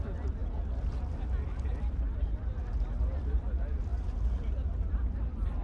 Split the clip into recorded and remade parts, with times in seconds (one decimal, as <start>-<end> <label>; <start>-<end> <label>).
0.0-5.6 recorded